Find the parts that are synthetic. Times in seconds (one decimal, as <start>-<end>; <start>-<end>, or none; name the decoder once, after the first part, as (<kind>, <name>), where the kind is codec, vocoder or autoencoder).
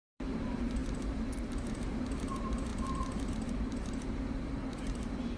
0.0-5.4 (vocoder, BigVGAN v2)